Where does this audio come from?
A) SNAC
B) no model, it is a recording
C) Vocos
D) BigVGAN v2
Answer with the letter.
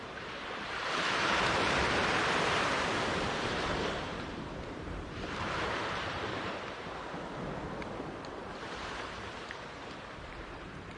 D